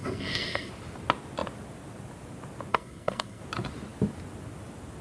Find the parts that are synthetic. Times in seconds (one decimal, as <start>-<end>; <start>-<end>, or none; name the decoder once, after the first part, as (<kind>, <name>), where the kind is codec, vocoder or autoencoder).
0.0-0.7 (codec, SNAC); 2.7-3.4